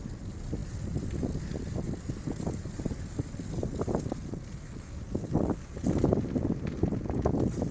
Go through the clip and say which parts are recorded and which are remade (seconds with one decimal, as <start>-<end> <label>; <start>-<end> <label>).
0.0-7.7 recorded